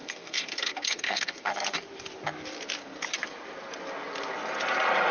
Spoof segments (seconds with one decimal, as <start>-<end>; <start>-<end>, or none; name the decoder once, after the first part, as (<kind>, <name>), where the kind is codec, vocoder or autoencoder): 0.0-1.5 (codec, SNAC)